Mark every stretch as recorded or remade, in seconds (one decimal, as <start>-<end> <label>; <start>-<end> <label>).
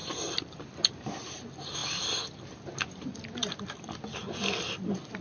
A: 0.0-5.2 recorded